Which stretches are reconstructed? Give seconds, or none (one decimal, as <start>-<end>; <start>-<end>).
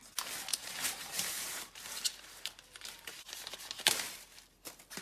0.5-3.5